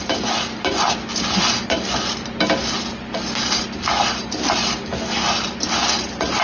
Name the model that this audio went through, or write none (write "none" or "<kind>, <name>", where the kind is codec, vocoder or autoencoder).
none